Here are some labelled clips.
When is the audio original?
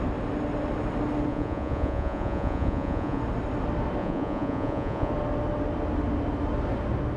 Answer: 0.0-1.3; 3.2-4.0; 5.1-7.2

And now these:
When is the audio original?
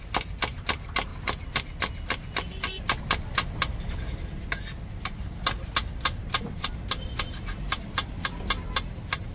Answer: 0.0-9.3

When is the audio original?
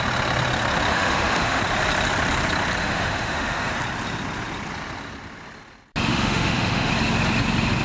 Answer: 0.0-0.9; 1.6-2.8; 3.7-6.1; 6.9-7.8